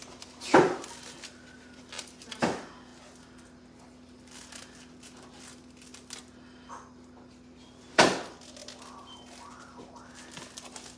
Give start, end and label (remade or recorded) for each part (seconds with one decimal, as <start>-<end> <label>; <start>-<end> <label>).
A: 0.0-11.0 recorded